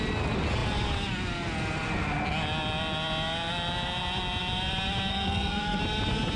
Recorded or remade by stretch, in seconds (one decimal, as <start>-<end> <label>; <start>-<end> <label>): 0.0-5.1 recorded; 5.1-5.8 remade; 5.8-6.4 recorded